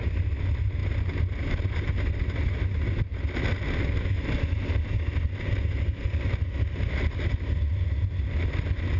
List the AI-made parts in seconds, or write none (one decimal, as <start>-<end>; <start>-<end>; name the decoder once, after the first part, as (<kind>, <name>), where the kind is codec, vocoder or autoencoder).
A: none